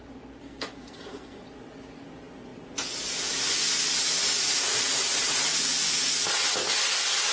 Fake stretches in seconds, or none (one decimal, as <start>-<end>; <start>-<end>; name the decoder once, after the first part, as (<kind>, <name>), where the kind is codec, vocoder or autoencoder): 0.4-1.4 (codec, SNAC)